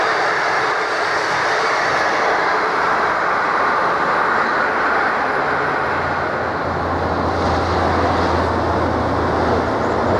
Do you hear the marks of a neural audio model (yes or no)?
no